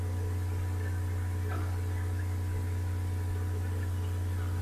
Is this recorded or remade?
recorded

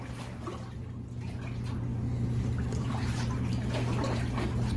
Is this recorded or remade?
recorded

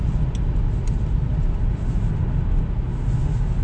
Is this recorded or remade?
recorded